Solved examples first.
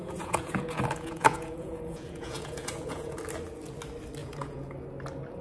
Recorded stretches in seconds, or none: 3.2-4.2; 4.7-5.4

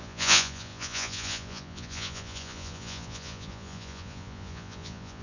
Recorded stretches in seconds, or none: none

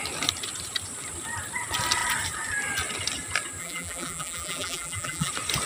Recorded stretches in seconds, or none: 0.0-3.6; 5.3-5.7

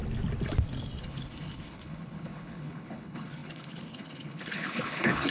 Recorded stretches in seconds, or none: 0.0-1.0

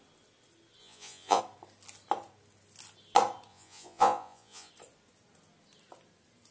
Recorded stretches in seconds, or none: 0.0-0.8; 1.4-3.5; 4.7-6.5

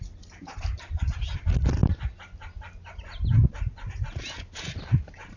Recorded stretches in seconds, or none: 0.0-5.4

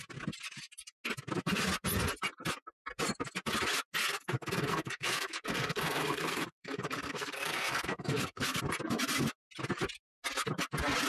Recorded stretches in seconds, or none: 0.0-4.0; 8.6-11.1